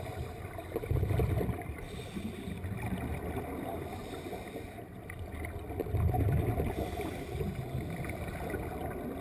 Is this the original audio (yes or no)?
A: yes